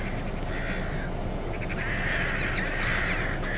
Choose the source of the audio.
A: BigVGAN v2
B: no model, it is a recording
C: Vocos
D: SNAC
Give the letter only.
B